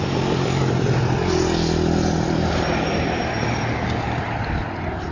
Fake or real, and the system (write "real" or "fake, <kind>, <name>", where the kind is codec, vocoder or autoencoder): real